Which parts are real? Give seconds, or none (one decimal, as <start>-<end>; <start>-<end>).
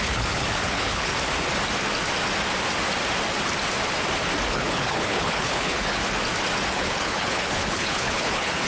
1.1-4.5; 6.0-6.7